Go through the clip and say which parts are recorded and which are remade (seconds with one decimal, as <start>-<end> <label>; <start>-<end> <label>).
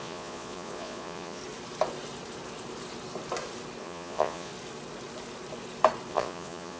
0.0-1.4 remade; 1.4-3.8 recorded; 3.8-4.5 remade; 4.5-6.1 recorded; 6.1-6.8 remade